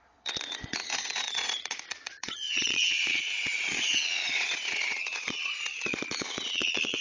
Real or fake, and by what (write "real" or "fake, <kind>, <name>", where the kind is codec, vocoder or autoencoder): fake, vocoder, Vocos